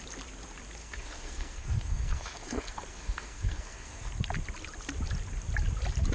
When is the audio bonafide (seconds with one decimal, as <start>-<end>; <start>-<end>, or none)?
0.0-0.8; 4.1-6.1